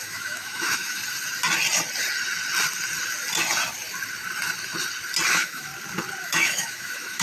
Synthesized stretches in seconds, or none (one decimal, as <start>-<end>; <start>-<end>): 0.0-1.0; 5.3-5.7; 6.2-7.2